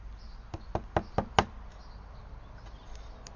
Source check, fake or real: real